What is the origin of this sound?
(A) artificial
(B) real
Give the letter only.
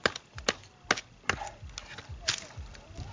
B